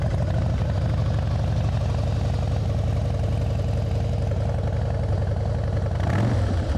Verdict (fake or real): real